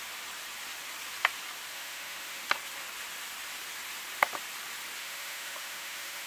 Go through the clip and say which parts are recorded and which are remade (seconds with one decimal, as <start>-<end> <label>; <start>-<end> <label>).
0.0-1.7 recorded; 1.7-2.4 remade; 2.4-5.0 recorded; 5.0-6.3 remade